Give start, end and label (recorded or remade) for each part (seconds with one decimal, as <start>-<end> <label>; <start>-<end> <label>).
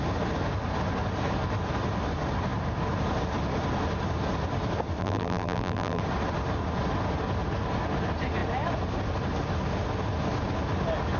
0.0-5.0 recorded; 5.0-6.0 remade; 6.0-11.2 recorded